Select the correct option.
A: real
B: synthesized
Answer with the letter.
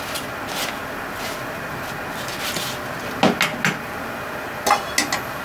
A